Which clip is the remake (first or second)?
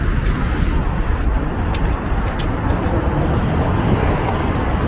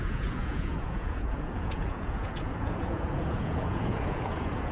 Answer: second